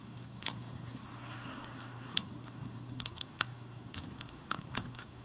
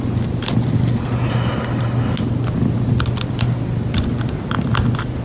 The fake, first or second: first